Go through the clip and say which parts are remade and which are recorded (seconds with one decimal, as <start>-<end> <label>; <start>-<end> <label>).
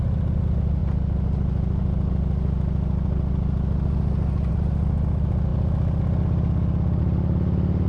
0.0-7.9 recorded